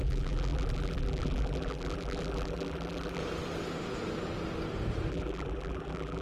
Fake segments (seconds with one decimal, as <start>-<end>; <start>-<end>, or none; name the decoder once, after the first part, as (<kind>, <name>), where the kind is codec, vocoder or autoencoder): 0.0-3.2 (vocoder, BigVGAN v2); 5.1-6.2